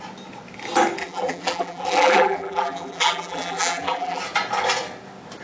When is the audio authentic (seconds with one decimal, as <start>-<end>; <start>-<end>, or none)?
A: 0.0-1.0; 4.2-5.4